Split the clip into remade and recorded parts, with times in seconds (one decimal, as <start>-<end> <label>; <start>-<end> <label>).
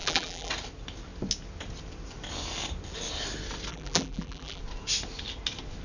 0.0-0.5 remade; 0.5-3.7 recorded; 3.7-4.6 remade; 4.6-5.8 recorded